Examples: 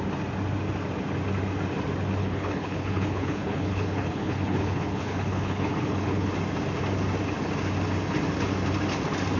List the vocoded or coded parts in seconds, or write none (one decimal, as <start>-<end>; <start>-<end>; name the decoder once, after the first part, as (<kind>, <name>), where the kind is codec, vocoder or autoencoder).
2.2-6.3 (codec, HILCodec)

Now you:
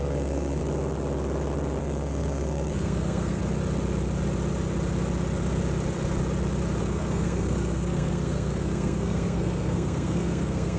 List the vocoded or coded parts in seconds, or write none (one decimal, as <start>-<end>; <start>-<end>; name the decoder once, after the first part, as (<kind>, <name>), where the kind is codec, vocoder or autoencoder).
0.0-0.6 (codec, SNAC); 1.8-3.4; 6.8-10.8

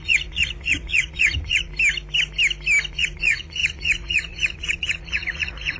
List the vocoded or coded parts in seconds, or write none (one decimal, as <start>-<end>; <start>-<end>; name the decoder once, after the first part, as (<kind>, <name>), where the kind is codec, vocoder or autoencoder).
0.0-1.7 (vocoder, Vocos); 2.9-5.8